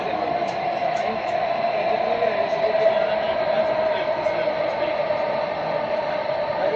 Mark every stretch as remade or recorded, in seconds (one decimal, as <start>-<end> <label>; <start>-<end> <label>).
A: 0.0-0.8 recorded; 0.8-1.8 remade; 1.8-6.8 recorded